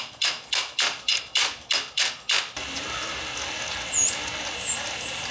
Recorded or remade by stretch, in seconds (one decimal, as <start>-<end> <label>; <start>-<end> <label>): 0.0-5.3 recorded